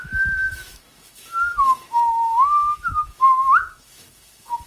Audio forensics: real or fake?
fake